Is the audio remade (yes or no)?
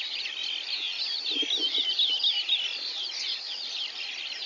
no